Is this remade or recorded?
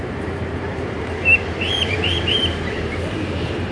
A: remade